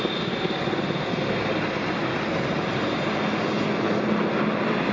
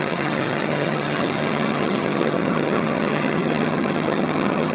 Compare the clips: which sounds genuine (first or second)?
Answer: first